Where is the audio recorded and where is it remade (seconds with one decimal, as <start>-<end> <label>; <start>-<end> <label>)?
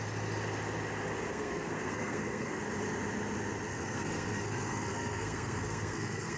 0.0-1.3 recorded; 1.3-2.6 remade; 2.6-3.7 recorded; 3.7-6.4 remade